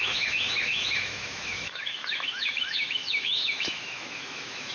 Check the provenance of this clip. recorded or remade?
remade